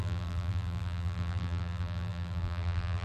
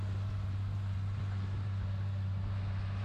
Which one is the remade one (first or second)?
first